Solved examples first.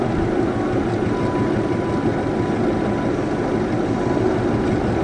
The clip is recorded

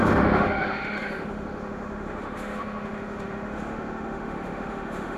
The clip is remade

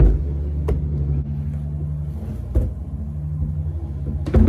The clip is recorded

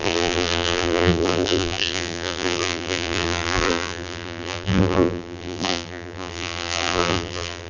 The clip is remade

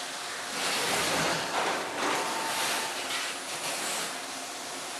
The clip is recorded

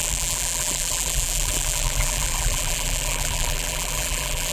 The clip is remade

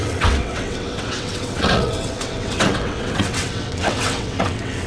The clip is remade